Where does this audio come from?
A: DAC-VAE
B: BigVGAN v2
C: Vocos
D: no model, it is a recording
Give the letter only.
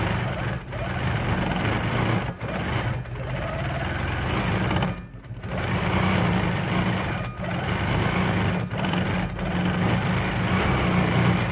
D